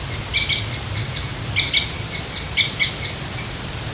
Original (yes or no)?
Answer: yes